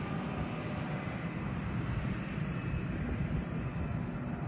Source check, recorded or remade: recorded